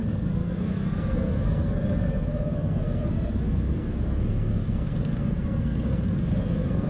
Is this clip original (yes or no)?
no